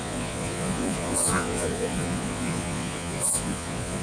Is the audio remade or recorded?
remade